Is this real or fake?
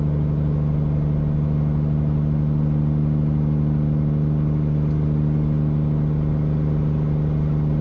real